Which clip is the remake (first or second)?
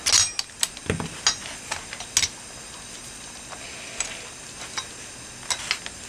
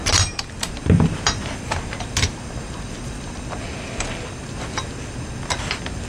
second